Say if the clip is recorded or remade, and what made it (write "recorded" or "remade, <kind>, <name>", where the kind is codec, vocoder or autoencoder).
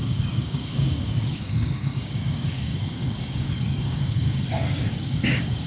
remade, codec, DAC